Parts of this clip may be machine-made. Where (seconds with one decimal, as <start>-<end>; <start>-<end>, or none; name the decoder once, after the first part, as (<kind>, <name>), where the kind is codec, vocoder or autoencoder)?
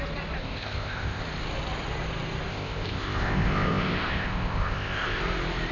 0.4-1.2 (codec, ZipCodec); 2.5-5.2